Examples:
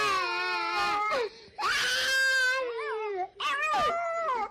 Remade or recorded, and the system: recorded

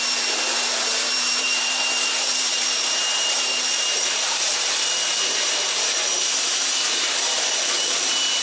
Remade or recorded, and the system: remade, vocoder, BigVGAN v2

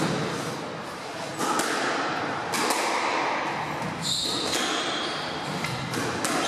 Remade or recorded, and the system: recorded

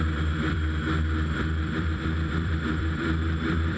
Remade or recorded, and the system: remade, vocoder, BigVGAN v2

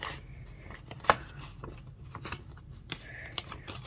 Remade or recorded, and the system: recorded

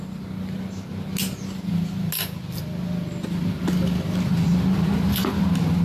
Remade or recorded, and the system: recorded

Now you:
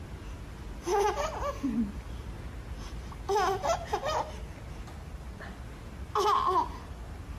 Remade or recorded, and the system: recorded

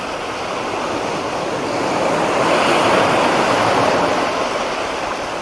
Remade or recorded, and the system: recorded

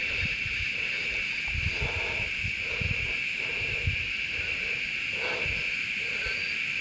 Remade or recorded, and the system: recorded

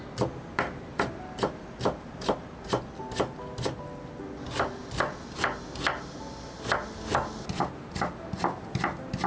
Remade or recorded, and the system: recorded